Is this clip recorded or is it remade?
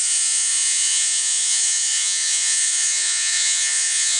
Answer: remade